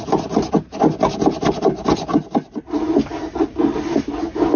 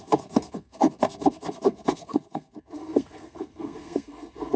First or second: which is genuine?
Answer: first